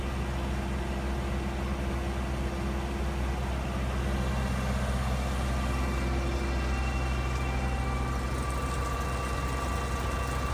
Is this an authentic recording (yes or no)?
yes